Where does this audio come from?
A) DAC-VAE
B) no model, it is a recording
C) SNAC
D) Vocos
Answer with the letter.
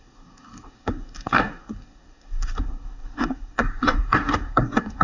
C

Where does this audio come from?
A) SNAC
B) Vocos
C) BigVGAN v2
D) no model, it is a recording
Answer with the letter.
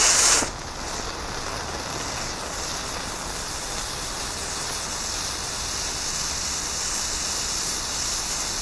D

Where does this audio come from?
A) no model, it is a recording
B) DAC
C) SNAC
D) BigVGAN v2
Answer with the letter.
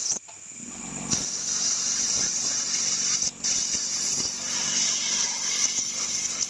A